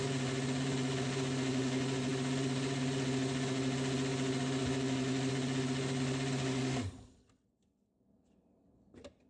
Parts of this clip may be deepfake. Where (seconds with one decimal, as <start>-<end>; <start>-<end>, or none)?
none